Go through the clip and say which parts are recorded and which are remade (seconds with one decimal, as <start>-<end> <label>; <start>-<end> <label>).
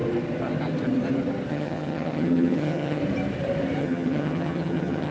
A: 0.0-1.5 recorded; 1.5-3.0 remade; 3.0-3.8 recorded; 3.8-5.1 remade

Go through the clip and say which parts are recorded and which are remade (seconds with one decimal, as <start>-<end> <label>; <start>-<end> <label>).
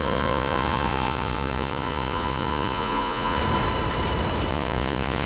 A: 0.0-3.4 remade; 3.4-4.5 recorded; 4.5-5.3 remade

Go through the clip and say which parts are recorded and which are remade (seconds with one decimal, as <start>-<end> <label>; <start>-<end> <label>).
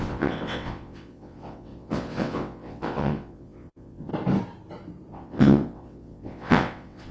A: 0.0-4.1 remade; 4.1-5.1 recorded; 5.1-7.1 remade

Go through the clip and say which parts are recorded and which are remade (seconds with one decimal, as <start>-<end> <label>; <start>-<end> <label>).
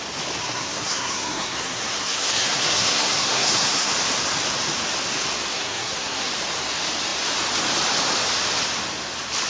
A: 0.0-0.4 recorded; 0.4-3.9 remade; 3.9-5.5 recorded; 5.5-6.3 remade; 6.3-9.5 recorded